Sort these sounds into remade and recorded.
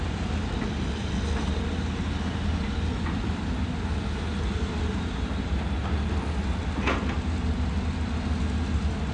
recorded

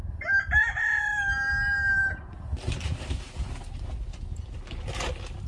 recorded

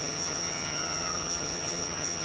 remade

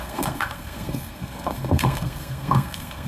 remade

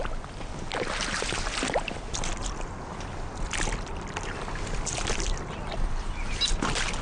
recorded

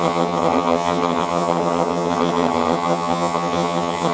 remade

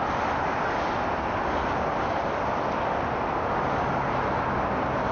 recorded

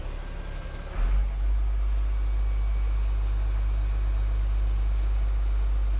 recorded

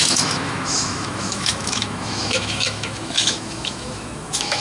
remade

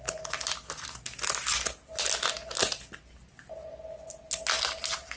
recorded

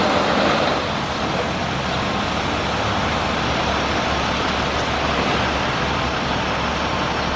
recorded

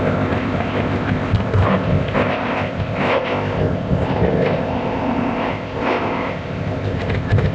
remade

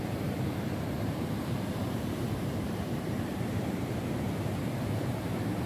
remade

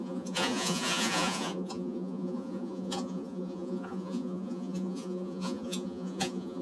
remade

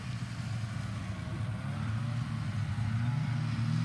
recorded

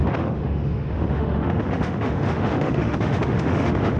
remade